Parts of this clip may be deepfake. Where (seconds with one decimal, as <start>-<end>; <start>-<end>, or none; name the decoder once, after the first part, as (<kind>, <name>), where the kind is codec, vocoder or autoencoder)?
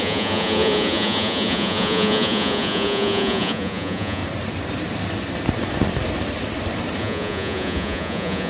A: 0.0-4.2 (vocoder, Vocos); 7.0-8.5